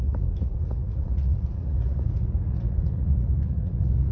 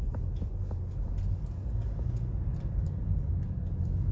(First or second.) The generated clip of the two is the first